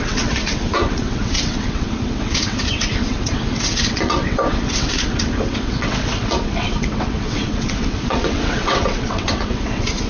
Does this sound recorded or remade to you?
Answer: remade